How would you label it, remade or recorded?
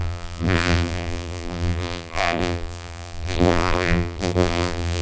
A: remade